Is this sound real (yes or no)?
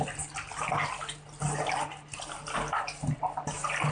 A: yes